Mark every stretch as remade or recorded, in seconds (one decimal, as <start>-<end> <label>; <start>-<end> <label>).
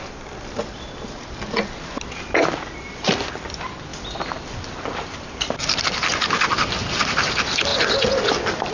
0.0-8.7 recorded